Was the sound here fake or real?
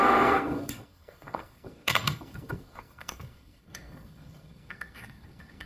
fake